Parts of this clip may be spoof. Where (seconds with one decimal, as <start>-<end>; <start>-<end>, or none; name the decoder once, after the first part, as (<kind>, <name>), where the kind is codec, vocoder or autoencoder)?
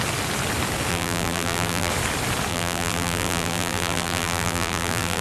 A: 0.9-1.9 (vocoder, BigVGAN v2); 2.5-5.2